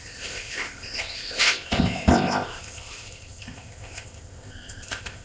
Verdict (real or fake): fake